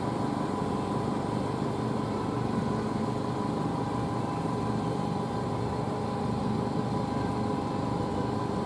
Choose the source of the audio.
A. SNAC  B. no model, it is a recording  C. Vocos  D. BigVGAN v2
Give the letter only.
D